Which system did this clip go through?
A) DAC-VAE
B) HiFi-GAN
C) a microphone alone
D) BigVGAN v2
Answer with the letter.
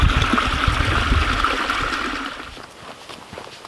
C